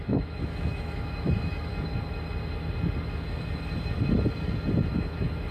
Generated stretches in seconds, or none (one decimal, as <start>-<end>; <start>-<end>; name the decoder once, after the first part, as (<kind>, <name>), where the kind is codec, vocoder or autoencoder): 0.0-1.7 (autoencoder, DAC-VAE); 4.9-5.5